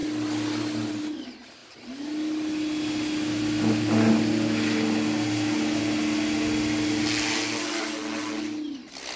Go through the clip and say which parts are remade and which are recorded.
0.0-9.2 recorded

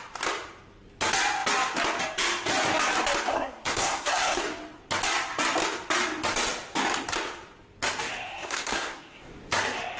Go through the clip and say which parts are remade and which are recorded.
0.0-3.3 recorded; 3.3-4.4 remade; 4.4-8.3 recorded; 8.3-9.3 remade; 9.3-10.0 recorded

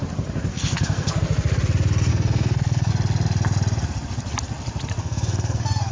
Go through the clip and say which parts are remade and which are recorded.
0.0-0.5 recorded; 0.5-1.2 remade; 1.2-2.1 recorded; 2.1-2.9 remade; 2.9-5.0 recorded; 5.0-5.9 remade

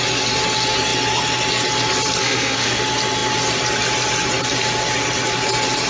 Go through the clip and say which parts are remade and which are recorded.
0.0-2.2 recorded; 2.2-2.8 remade; 2.8-5.9 recorded

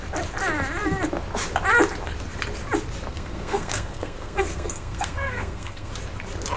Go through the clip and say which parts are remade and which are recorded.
0.0-3.1 recorded; 3.1-5.9 remade; 5.9-6.6 recorded

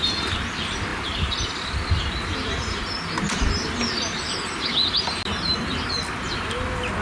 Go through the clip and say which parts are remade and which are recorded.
0.0-7.0 recorded

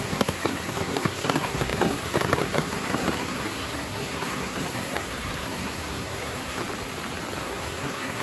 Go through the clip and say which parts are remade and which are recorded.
0.0-6.6 remade; 6.6-7.4 recorded; 7.4-8.2 remade

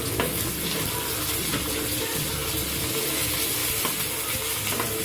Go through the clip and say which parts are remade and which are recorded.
0.0-5.0 recorded